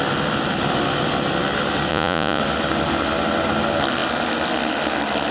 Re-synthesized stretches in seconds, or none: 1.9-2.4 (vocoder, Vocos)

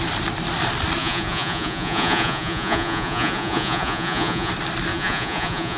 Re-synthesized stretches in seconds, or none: 1.0-4.5 (vocoder, Vocos); 4.9-5.8